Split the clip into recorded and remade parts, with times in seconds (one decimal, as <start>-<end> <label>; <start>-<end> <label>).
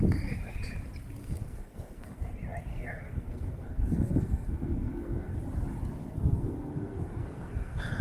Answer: 0.0-1.2 recorded; 1.2-2.2 remade; 2.2-2.7 recorded; 2.7-5.4 remade; 5.4-6.0 recorded; 6.0-8.0 remade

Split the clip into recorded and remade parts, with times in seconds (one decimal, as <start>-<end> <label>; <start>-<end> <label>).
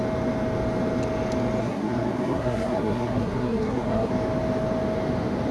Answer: 0.0-1.6 recorded; 1.6-4.1 remade; 4.1-5.5 recorded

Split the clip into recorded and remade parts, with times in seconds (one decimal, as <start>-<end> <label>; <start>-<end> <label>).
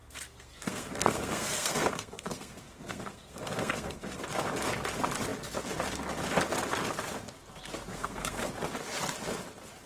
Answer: 0.0-4.2 remade; 4.2-7.9 recorded; 7.9-8.5 remade; 8.5-9.9 recorded